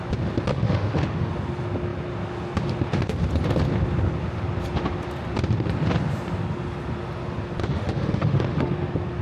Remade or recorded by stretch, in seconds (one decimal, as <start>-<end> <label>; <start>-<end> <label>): 0.0-0.5 recorded; 0.5-1.3 remade; 1.3-7.6 recorded; 7.6-8.7 remade; 8.7-9.2 recorded